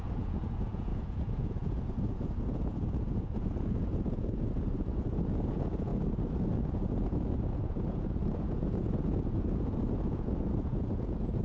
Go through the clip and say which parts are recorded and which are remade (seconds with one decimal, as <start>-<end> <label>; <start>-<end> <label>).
0.0-5.9 remade; 5.9-6.7 recorded; 6.7-11.4 remade